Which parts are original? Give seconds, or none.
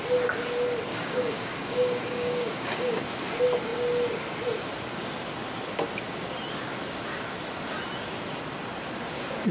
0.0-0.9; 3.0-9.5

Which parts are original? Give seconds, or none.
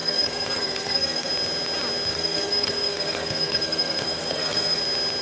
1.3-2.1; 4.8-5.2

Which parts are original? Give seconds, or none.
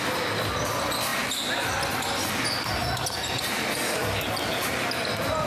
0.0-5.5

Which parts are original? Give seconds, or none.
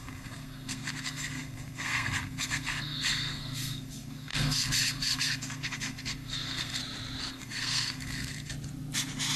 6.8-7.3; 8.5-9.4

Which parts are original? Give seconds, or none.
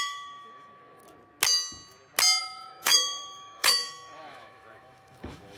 1.0-2.4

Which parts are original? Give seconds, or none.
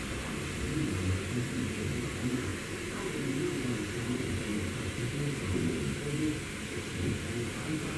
0.0-8.0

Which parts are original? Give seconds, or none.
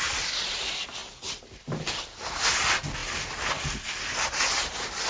0.0-5.1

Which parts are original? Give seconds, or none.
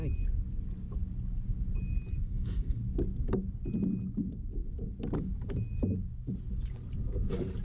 0.0-2.1; 2.8-7.6